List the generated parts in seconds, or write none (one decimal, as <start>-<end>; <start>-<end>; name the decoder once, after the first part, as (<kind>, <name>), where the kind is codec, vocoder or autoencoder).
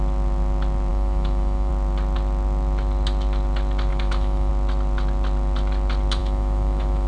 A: 0.9-1.7 (autoencoder, DAC-VAE); 3.9-4.5; 6.2-7.1